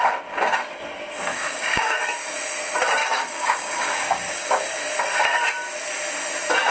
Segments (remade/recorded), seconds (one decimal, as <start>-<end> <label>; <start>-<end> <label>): 0.0-1.3 recorded; 1.3-2.0 remade; 2.0-3.0 recorded; 3.0-4.6 remade; 4.6-6.7 recorded